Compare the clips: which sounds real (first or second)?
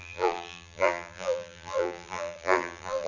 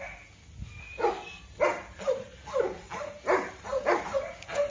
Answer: second